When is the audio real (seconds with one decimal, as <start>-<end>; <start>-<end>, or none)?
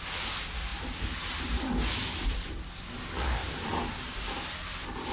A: 0.0-0.7; 2.4-3.4; 4.2-5.1